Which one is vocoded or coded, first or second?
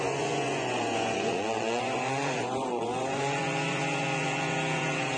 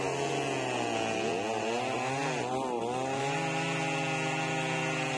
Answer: first